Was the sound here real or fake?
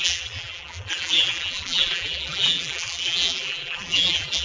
fake